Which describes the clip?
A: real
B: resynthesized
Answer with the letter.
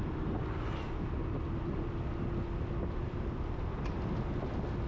A